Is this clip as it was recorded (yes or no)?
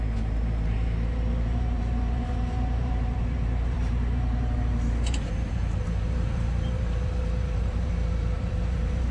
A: no